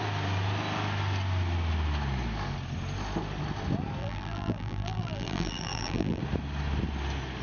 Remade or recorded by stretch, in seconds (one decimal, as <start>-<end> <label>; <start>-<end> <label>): 0.0-4.0 recorded; 4.0-6.2 remade; 6.2-7.4 recorded